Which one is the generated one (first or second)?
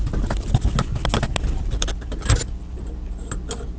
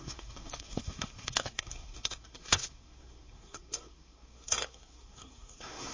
second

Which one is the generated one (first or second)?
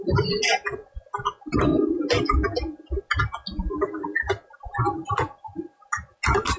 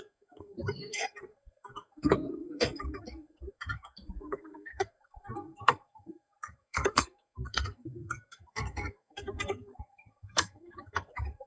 second